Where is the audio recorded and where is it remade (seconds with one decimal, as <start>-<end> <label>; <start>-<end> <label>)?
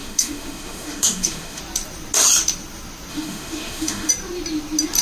0.0-1.6 remade; 1.6-3.1 recorded; 3.1-4.1 remade; 4.1-5.0 recorded